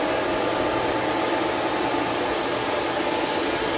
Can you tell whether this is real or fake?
real